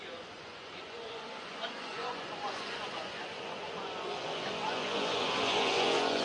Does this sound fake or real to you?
fake